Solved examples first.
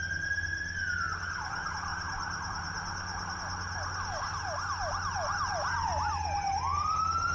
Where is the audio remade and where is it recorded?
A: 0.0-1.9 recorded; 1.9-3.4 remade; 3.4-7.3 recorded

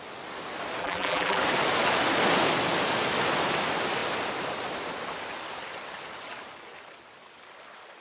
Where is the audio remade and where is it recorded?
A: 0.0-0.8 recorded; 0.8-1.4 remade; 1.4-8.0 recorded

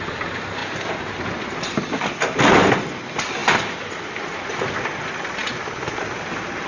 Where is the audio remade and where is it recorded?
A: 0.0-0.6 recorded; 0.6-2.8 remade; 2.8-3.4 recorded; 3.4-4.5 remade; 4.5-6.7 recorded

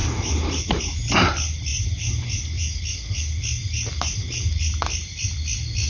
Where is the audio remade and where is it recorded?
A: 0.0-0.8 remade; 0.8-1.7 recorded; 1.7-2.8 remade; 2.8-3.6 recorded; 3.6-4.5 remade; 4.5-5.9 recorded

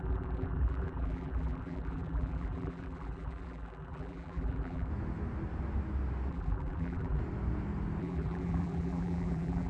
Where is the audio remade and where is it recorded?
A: 0.0-4.9 remade; 4.9-6.3 recorded; 6.3-7.2 remade; 7.2-8.0 recorded; 8.0-9.7 remade

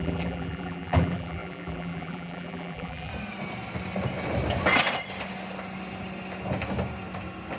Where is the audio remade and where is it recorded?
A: 0.0-3.1 remade; 3.1-7.6 recorded

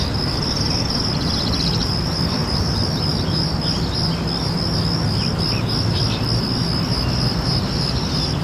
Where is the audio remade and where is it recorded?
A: 0.0-8.4 recorded